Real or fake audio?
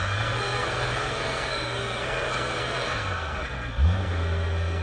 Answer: fake